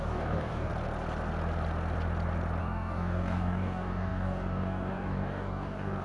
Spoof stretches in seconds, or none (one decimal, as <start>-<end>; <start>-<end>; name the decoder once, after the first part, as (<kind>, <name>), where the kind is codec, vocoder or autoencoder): 0.0-0.7 (codec, DAC); 2.6-6.0